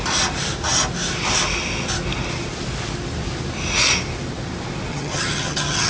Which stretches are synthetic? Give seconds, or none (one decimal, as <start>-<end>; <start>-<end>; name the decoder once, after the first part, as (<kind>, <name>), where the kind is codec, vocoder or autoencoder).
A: 4.9-5.9 (vocoder, HiFi-GAN)